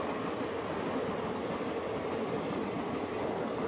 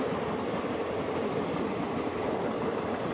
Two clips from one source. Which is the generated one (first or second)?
second